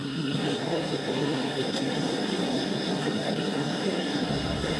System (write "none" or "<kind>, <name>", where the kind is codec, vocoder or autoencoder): codec, SNAC